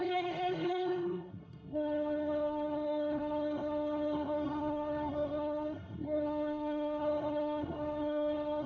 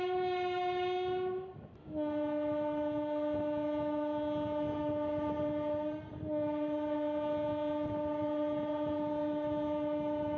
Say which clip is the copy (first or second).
first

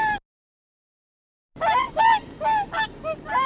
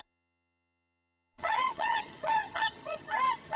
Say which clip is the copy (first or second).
second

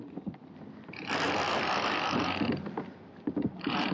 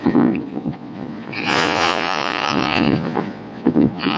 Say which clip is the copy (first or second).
second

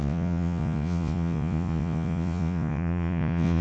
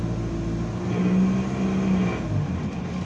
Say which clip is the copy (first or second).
first